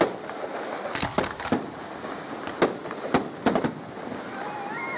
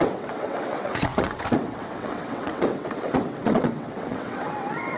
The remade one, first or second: second